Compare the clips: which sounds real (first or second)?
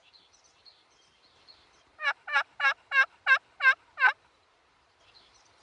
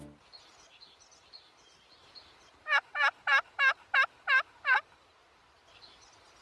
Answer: second